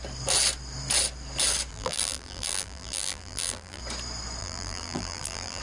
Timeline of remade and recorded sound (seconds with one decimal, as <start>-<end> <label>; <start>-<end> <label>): 0.0-1.7 recorded; 1.7-3.8 remade; 3.8-4.4 recorded; 4.4-5.6 remade